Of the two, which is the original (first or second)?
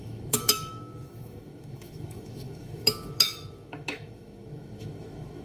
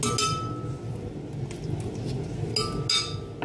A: second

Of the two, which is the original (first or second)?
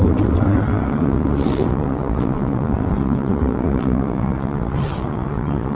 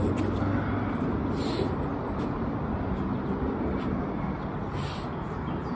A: second